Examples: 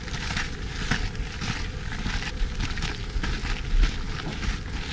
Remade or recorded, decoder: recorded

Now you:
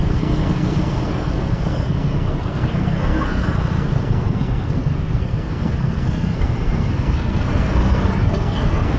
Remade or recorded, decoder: remade, codec, SNAC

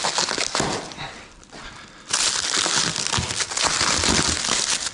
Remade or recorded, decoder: recorded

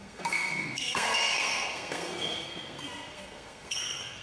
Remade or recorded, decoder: remade, codec, SNAC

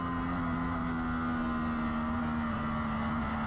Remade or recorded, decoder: recorded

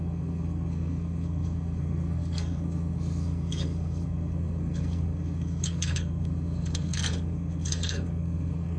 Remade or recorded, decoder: remade, codec, SNAC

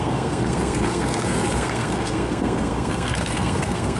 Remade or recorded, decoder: remade, codec, SNAC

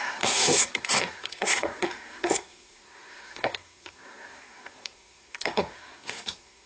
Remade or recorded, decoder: remade, codec, SNAC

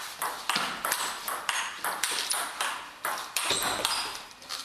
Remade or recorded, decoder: recorded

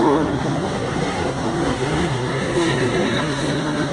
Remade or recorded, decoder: remade, codec, SNAC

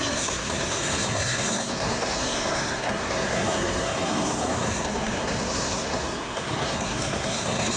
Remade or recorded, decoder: remade, codec, SNAC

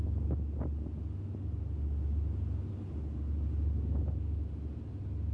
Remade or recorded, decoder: recorded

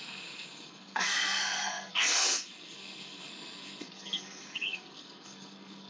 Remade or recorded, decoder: remade, codec, SNAC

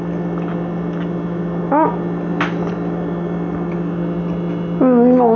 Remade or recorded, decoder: recorded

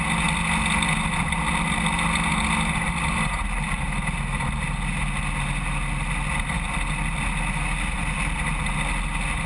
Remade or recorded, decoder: recorded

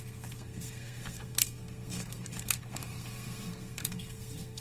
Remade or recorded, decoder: remade, codec, SNAC